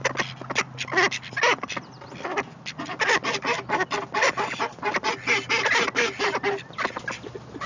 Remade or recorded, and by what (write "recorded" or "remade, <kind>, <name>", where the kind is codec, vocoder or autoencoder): recorded